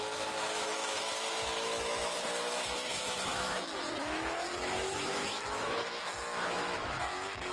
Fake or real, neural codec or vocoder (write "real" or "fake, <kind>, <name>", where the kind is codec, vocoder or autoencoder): fake, autoencoder, DAC-VAE